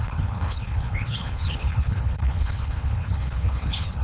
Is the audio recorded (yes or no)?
no